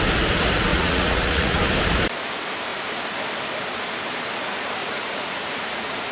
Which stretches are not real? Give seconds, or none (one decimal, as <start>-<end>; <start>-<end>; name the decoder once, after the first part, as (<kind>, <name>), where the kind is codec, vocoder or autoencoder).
0.7-1.6 (vocoder, Vocos); 4.8-6.1